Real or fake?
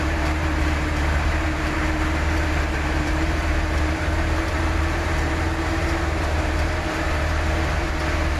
fake